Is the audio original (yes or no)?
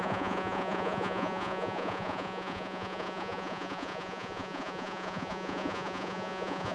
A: no